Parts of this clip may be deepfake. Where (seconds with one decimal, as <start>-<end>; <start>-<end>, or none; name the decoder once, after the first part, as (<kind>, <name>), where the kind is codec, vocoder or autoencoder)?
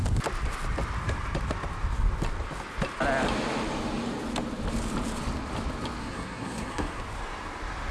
6.0-7.0 (codec, SNAC)